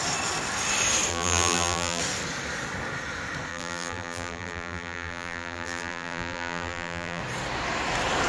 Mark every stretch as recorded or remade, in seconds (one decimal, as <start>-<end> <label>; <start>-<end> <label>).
0.0-1.1 recorded; 1.1-2.0 remade; 2.0-3.5 recorded; 3.5-7.2 remade; 7.2-8.3 recorded